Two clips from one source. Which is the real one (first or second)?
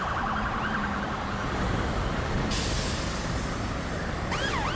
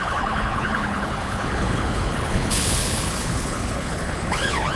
first